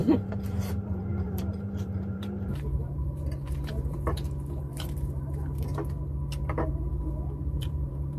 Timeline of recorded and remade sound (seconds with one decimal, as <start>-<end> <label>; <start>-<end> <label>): 0.0-5.7 remade; 5.7-6.7 recorded; 6.7-8.2 remade